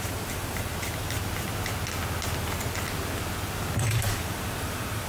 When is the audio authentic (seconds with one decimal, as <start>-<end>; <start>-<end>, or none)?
0.7-3.8

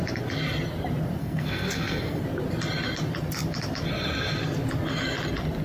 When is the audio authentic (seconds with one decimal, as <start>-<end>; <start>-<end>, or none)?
0.0-1.2; 2.2-5.6

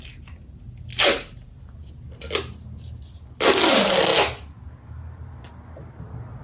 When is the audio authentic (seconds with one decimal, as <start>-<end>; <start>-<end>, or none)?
0.0-0.9; 1.9-6.4

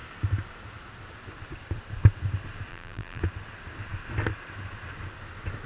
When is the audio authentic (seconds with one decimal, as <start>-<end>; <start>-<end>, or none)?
0.0-2.7; 3.2-5.7